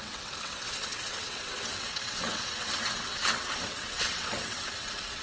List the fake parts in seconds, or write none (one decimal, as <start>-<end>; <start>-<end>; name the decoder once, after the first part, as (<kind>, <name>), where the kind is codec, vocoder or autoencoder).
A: 0.0-5.2 (vocoder, WaveNeXt)